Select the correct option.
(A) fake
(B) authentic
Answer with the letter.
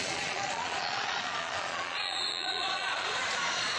A